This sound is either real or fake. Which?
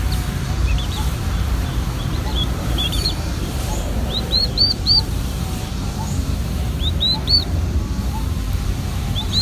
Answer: fake